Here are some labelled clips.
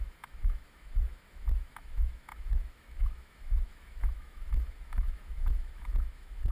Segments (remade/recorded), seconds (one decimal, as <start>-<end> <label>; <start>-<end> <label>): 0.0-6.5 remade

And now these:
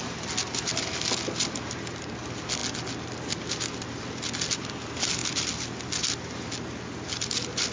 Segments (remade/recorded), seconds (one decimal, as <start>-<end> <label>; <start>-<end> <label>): 0.0-7.7 recorded

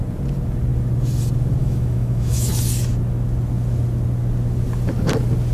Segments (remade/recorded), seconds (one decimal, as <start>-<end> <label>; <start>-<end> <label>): 0.0-1.6 recorded; 1.6-2.5 remade; 2.5-5.5 recorded

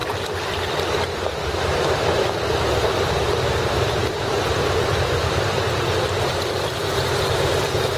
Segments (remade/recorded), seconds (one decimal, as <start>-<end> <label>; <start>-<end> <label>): 0.0-5.2 recorded; 5.2-8.0 remade

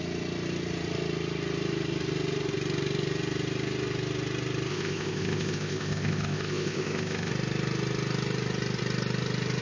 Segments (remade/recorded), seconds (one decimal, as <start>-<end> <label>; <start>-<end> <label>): 0.0-4.7 recorded; 4.7-7.3 remade; 7.3-9.6 recorded

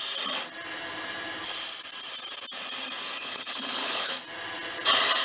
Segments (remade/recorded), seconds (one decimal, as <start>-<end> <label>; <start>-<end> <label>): 0.0-3.2 recorded; 3.2-4.1 remade; 4.1-5.2 recorded

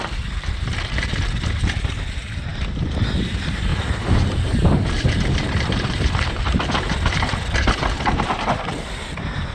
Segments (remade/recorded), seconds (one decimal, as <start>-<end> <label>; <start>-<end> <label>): 0.0-2.5 remade; 2.5-3.1 recorded; 3.1-9.5 remade